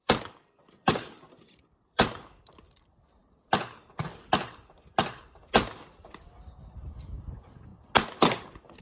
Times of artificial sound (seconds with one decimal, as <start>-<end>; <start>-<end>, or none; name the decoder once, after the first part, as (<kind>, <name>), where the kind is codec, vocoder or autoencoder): 0.0-7.7 (vocoder, BigVGAN v2)